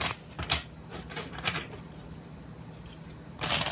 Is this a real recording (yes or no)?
no